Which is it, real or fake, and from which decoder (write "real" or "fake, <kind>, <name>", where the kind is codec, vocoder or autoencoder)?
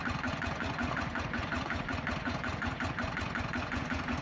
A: fake, vocoder, Vocos